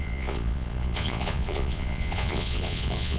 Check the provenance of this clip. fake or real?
fake